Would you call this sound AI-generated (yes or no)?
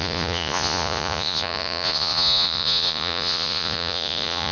yes